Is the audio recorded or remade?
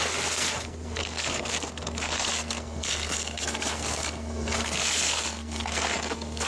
remade